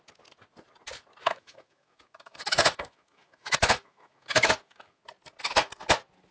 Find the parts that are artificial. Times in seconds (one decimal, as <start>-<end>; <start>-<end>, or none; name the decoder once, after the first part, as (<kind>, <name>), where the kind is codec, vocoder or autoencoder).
1.2-5.0 (autoencoder, DAC-VAE)